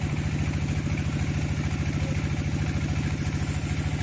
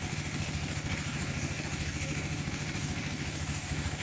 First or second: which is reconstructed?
second